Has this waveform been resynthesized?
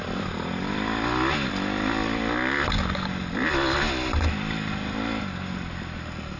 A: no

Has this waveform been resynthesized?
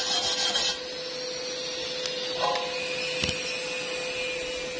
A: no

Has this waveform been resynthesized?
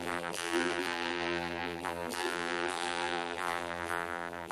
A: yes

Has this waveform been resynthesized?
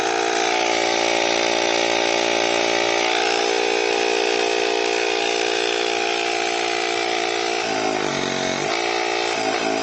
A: no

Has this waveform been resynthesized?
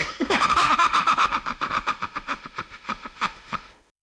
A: yes